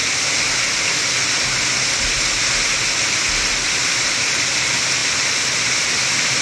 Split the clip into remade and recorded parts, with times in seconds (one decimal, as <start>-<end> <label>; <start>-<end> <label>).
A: 0.0-3.8 recorded; 3.8-6.4 remade